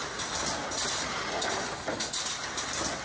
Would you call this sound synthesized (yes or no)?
no